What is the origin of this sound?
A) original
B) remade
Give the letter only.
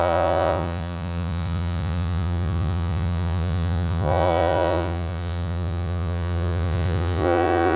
B